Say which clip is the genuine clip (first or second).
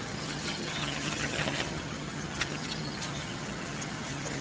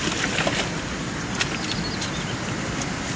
second